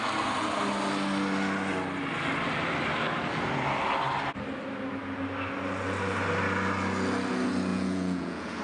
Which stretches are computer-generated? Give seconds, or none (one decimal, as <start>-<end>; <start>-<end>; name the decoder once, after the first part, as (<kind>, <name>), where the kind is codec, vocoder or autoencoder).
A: 7.7-8.6 (vocoder, Vocos)